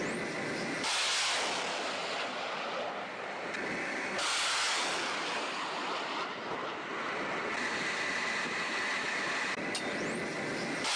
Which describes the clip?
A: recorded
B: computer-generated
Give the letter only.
A